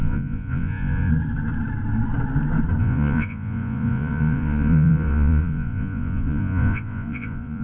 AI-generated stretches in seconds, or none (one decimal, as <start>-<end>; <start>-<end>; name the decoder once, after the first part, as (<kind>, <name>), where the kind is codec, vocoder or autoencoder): 0.0-1.1 (vocoder, Vocos); 2.8-7.6